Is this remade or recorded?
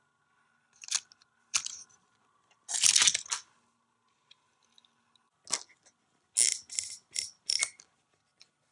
recorded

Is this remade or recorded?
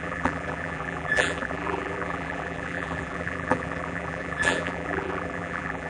remade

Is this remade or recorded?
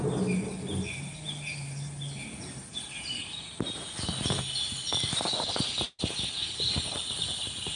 recorded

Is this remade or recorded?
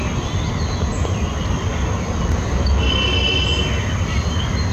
recorded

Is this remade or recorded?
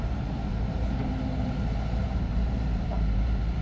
remade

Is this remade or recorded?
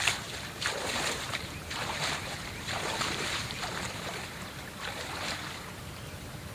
remade